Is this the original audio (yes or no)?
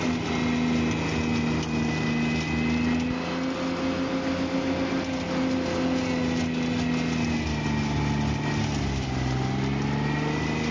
yes